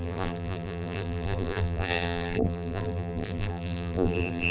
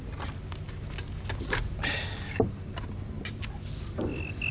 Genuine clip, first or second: second